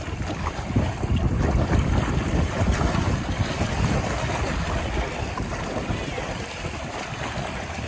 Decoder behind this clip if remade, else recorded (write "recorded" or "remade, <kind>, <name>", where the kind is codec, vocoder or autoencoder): remade, vocoder, BigVGAN v2